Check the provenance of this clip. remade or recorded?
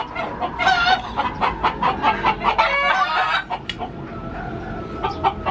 recorded